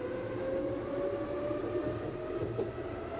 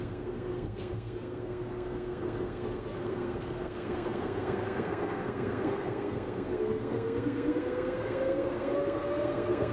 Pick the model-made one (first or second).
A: second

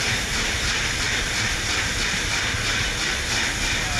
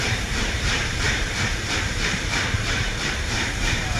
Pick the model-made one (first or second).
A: second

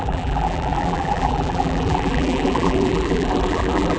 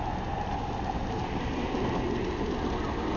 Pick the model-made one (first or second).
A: first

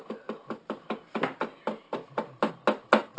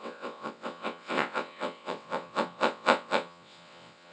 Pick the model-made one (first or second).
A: second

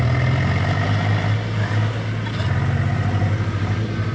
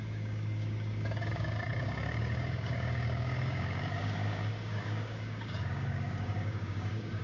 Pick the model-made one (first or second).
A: second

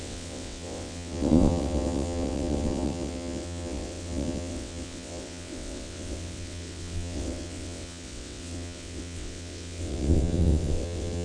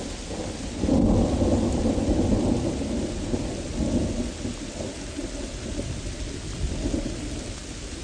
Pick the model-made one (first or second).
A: first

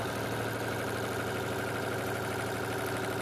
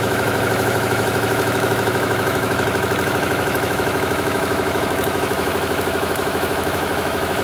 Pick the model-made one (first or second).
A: second